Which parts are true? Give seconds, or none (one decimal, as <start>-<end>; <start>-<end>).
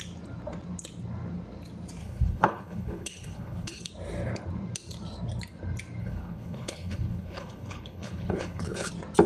0.0-2.0; 3.9-6.0; 8.9-9.3